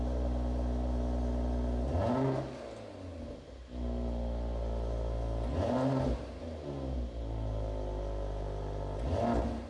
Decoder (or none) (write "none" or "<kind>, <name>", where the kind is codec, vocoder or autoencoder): none